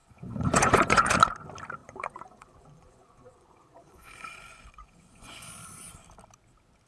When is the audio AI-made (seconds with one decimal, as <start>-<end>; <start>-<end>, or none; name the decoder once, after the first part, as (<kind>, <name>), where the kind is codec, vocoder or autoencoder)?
0.0-1.1 (vocoder, Vocos); 1.8-5.5